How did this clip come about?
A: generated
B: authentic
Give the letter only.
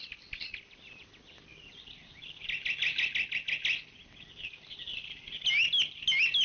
B